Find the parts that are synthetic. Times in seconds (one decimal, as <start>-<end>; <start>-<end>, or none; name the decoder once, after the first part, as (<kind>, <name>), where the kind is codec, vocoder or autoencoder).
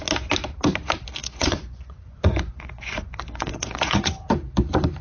1.2-4.2 (vocoder, Vocos)